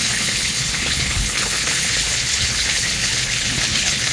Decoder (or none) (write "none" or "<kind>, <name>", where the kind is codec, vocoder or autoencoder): codec, HILCodec